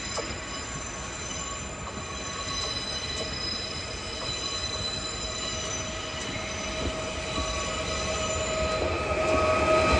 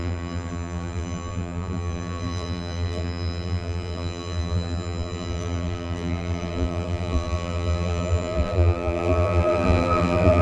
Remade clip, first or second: second